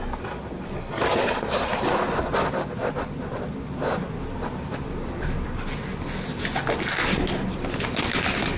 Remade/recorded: recorded